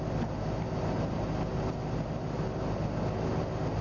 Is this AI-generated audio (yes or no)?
no